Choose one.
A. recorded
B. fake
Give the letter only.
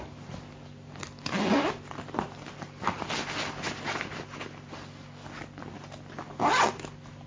A